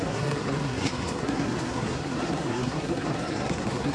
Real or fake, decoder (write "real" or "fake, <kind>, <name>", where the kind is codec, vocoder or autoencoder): fake, codec, SNAC